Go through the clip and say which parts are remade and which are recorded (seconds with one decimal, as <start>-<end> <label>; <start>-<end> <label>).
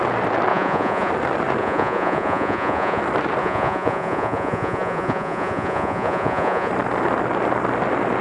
0.0-0.5 recorded; 0.5-1.1 remade; 1.1-1.6 recorded; 1.6-3.0 remade; 3.0-3.4 recorded; 3.4-6.7 remade; 6.7-8.2 recorded